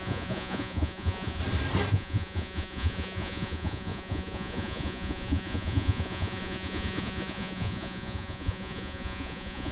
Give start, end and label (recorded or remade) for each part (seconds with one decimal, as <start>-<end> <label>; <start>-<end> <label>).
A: 0.0-1.4 remade; 1.4-1.9 recorded; 1.9-9.7 remade